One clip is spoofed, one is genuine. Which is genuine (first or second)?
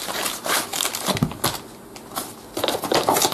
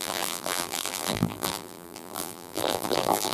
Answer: first